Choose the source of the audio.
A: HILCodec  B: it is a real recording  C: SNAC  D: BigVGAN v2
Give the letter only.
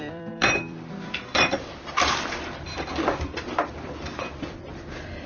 D